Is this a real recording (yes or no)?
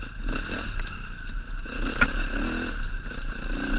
yes